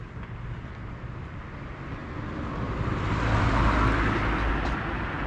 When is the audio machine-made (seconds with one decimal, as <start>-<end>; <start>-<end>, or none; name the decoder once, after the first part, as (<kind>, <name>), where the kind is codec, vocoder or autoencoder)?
none